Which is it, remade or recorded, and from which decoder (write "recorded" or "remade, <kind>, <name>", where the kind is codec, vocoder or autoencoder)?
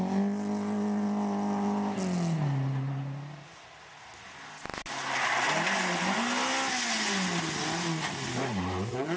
recorded